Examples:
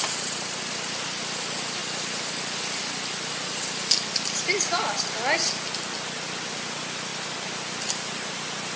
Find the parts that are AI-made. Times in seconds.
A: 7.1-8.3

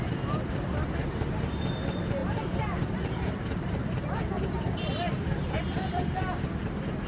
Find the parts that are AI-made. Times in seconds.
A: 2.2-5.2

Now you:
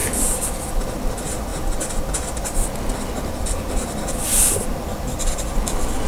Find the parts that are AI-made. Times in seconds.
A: none

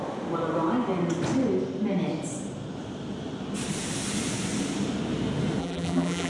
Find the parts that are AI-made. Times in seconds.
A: 5.6-6.3